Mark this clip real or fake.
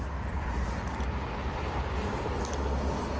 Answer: real